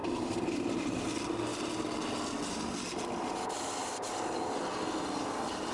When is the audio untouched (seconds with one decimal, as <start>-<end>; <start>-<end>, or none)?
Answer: 1.1-5.7